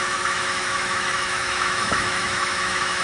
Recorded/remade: remade